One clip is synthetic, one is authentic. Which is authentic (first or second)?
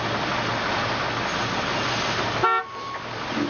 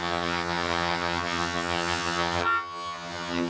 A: first